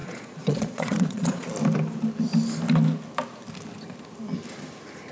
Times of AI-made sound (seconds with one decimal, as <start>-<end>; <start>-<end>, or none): 0.0-1.5